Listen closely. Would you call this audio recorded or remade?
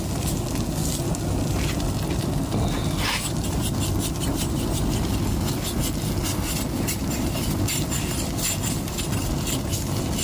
recorded